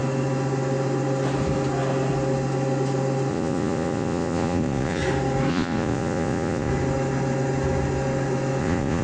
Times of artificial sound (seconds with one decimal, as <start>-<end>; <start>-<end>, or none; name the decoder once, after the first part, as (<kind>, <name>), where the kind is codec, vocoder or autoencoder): 3.3-5.0 (vocoder, Vocos); 5.5-6.7; 8.6-9.0